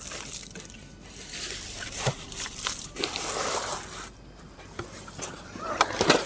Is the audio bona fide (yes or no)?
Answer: no